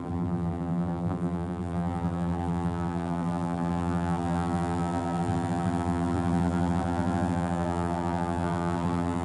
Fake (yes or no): yes